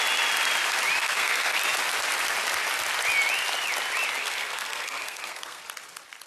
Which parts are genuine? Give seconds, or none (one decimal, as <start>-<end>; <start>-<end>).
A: 0.0-1.0; 1.6-4.2; 5.6-6.3

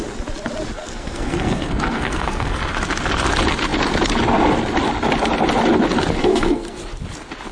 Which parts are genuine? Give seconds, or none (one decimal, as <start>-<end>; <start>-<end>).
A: 0.0-0.8; 2.6-6.2; 6.8-7.5

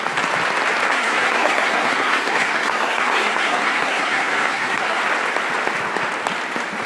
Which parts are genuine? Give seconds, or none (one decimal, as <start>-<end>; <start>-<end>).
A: 0.0-0.9; 5.0-6.9

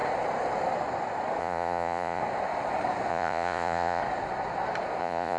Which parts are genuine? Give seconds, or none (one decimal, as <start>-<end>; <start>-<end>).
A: 0.0-1.4; 2.2-3.1; 4.0-5.0

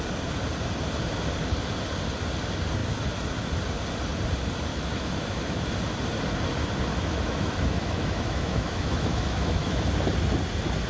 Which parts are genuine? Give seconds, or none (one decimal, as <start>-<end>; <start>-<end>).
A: 0.0-4.7; 5.7-6.9; 9.9-10.9